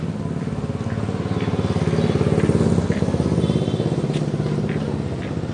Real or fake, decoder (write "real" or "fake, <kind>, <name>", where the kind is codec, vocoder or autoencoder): real